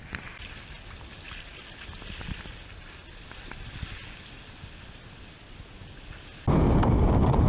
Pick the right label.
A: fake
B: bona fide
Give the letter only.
B